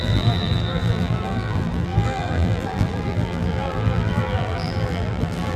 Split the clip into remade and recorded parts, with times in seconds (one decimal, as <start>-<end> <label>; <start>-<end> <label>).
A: 0.0-5.6 remade